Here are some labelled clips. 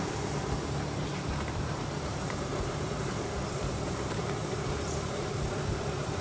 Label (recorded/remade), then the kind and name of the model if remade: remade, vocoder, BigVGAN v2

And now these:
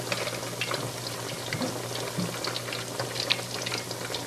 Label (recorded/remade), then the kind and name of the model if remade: recorded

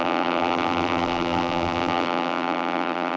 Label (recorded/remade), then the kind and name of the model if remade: remade, vocoder, BigVGAN v2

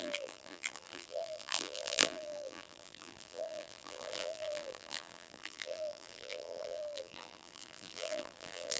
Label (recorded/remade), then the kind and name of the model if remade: remade, vocoder, BigVGAN v2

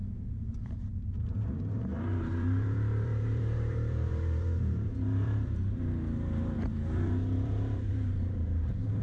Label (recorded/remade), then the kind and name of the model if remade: remade, vocoder, BigVGAN v2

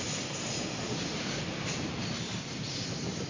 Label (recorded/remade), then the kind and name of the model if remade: remade, vocoder, BigVGAN v2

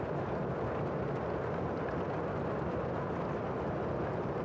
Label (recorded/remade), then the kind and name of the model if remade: recorded